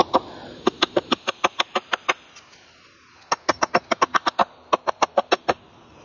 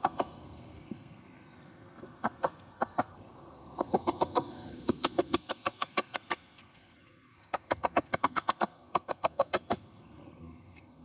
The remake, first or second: second